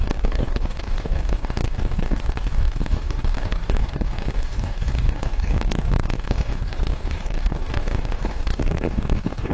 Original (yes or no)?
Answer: no